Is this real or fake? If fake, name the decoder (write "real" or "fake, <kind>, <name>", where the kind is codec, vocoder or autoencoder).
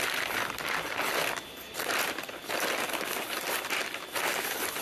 real